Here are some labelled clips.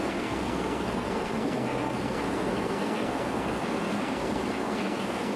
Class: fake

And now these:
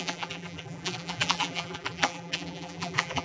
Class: fake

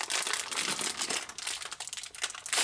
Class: real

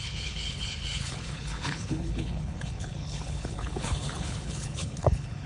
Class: fake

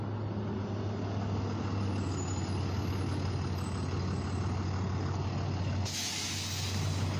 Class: real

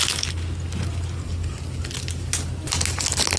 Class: real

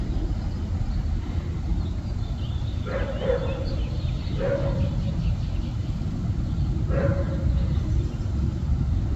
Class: real